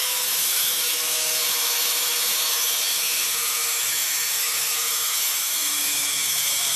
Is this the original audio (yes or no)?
no